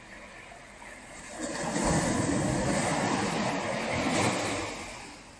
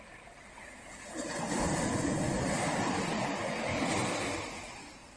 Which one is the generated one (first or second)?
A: second